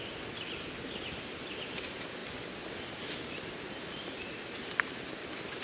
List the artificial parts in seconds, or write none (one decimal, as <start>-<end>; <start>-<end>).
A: none